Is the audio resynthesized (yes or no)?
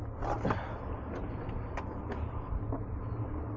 no